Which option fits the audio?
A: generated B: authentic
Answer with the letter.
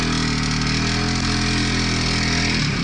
B